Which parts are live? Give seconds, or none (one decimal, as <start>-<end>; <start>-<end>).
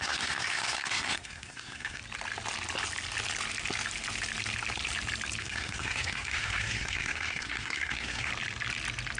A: 2.0-5.4; 8.3-9.2